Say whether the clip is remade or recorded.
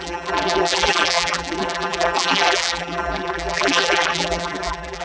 remade